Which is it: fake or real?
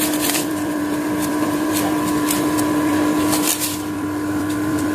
fake